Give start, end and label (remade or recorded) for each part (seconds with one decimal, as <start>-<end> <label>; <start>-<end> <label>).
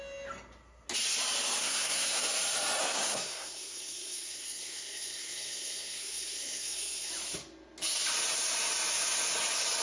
0.0-1.6 recorded; 1.6-2.2 remade; 2.2-2.8 recorded; 2.8-7.1 remade; 7.1-9.8 recorded